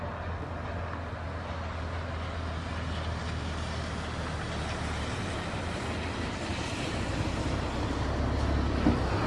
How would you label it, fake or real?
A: real